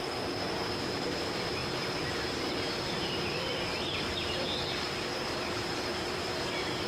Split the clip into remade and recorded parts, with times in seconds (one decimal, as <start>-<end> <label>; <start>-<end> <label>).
0.0-3.7 remade; 3.7-4.8 recorded; 4.8-5.9 remade; 5.9-6.9 recorded